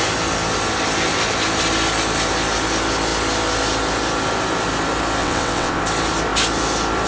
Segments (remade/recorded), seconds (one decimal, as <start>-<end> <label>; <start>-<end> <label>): 0.0-5.2 recorded; 5.2-5.8 remade; 5.8-7.1 recorded